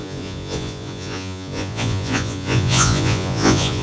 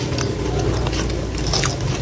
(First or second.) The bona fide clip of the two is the second